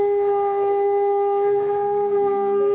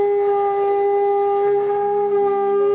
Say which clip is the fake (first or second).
first